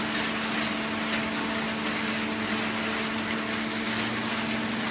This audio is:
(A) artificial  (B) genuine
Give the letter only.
B